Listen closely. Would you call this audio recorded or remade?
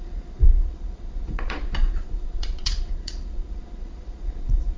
remade